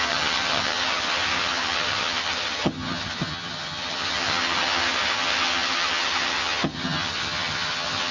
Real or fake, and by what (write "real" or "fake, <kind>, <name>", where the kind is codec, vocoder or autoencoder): fake, vocoder, HiFi-GAN